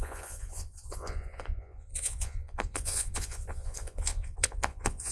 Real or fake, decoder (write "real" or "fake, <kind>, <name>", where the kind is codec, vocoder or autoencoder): fake, vocoder, Vocos